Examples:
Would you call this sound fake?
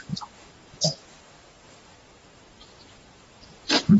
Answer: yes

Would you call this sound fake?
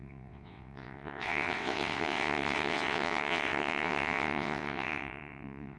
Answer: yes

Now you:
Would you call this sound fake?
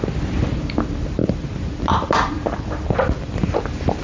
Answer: yes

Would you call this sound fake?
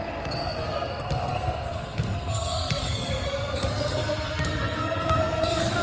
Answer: yes